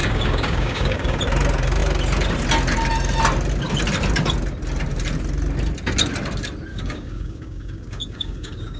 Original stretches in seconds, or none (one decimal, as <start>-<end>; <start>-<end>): 1.2-6.7